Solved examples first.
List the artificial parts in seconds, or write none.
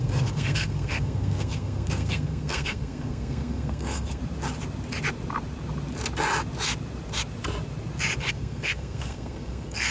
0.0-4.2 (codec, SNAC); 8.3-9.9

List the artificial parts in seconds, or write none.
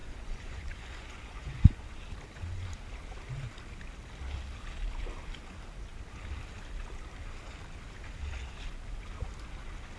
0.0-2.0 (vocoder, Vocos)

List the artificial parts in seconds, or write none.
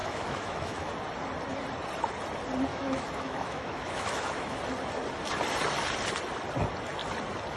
0.0-0.9 (autoencoder, DAC-VAE); 2.7-4.6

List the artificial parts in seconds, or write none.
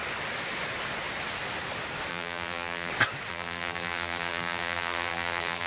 2.1-2.9 (vocoder, BigVGAN v2); 3.3-5.7